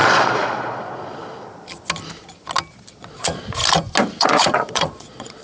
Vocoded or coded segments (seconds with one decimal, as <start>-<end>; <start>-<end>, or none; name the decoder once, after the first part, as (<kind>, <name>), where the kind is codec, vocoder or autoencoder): 0.0-1.2 (vocoder, Vocos); 2.7-3.6; 4.2-5.4